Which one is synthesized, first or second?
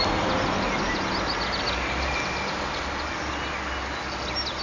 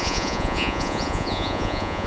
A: second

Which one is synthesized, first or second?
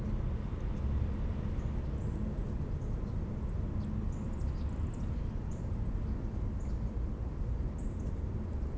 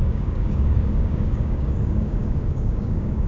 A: second